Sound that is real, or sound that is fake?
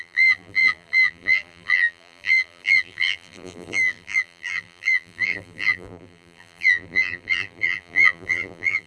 fake